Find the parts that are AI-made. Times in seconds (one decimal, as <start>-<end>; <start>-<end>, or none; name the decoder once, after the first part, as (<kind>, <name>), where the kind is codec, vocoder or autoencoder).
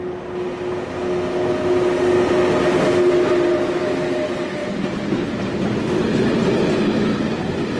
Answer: 4.6-5.6 (vocoder, BigVGAN v2)